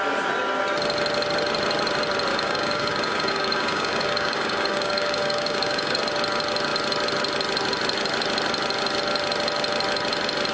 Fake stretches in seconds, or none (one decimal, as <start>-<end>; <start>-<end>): 2.3-6.0